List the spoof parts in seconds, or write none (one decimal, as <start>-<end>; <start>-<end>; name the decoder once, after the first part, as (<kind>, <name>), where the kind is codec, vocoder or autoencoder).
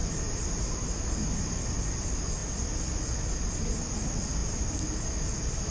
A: none